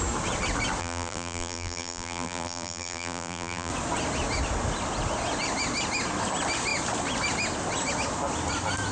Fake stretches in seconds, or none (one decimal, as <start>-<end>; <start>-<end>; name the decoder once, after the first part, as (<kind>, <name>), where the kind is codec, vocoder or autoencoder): 0.8-3.7 (vocoder, BigVGAN v2)